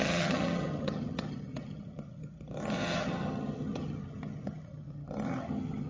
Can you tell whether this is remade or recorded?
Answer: remade